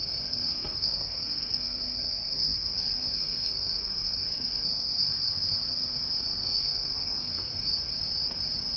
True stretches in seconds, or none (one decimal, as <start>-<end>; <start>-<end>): 7.5-8.8